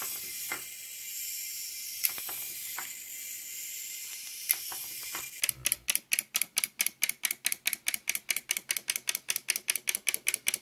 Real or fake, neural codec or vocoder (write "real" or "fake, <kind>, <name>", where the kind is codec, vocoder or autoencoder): real